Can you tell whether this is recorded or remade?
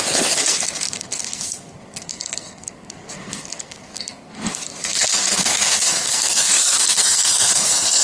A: remade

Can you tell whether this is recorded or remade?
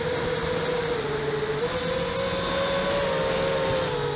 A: recorded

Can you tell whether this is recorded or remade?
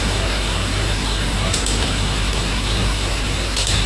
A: remade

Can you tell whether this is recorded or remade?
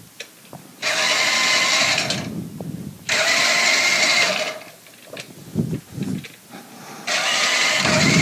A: recorded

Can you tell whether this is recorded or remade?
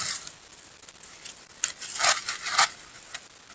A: recorded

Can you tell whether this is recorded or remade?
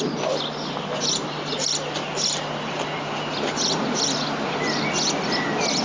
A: recorded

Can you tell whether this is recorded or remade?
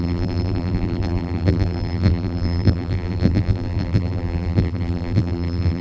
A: remade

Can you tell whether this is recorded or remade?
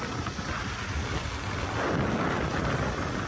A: recorded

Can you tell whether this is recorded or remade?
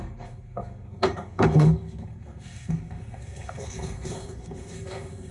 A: remade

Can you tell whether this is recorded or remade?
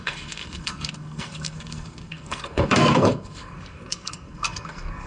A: remade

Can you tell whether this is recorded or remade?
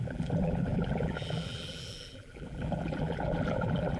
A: remade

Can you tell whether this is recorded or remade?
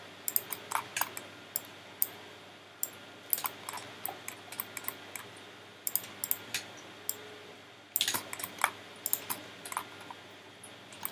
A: recorded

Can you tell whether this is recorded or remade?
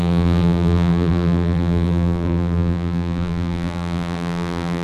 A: remade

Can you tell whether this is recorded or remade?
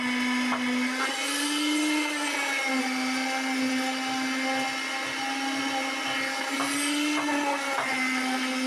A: recorded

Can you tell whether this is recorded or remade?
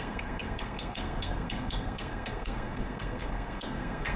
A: remade